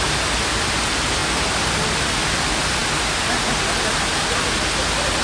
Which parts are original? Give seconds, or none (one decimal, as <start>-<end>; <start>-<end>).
0.0-5.2